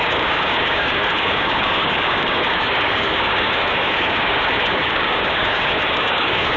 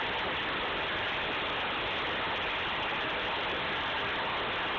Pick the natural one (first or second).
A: second